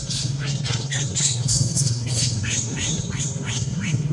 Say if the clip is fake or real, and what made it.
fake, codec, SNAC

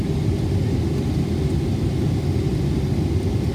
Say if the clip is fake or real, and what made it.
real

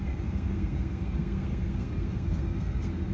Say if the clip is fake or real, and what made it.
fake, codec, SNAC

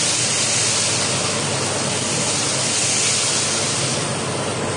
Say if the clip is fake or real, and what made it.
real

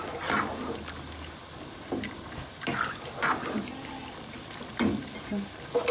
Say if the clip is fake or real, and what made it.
real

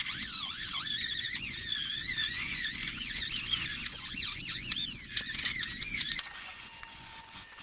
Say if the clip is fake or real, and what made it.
fake, vocoder, Vocos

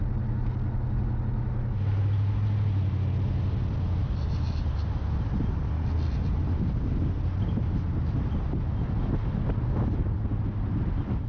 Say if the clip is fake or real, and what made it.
real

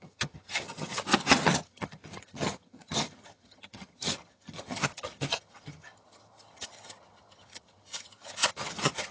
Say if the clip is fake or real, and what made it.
fake, vocoder, HiFi-GAN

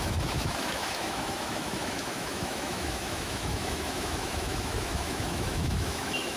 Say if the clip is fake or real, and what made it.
fake, autoencoder, DAC-VAE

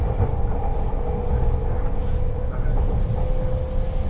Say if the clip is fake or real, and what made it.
real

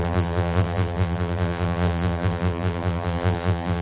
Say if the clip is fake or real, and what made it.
fake, vocoder, BigVGAN v2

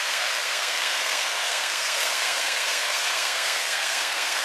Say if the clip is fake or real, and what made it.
fake, codec, SNAC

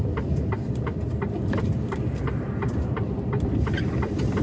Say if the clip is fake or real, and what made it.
fake, vocoder, BigVGAN v2